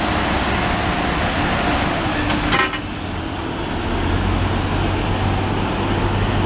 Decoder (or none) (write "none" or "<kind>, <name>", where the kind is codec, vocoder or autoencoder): none